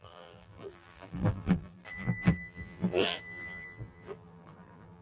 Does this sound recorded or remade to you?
remade